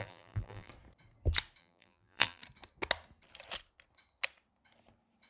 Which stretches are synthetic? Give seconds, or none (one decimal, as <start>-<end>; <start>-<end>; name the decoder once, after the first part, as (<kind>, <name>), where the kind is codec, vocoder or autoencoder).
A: 0.0-0.7 (vocoder, BigVGAN v2); 1.6-2.4